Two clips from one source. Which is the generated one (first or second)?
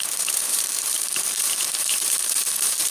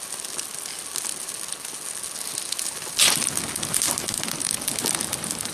first